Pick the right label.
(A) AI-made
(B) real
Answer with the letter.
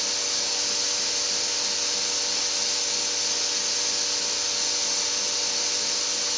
B